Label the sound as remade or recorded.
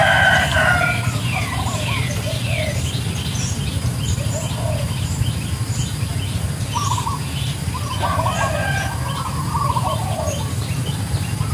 recorded